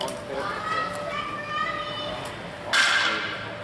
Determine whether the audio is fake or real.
real